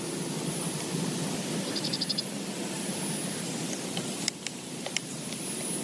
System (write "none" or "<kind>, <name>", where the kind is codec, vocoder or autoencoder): none